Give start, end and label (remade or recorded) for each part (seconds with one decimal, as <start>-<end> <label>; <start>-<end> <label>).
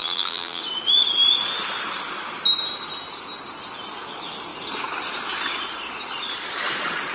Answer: 0.0-0.6 remade; 0.6-7.1 recorded